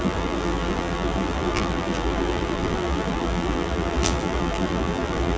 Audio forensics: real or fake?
fake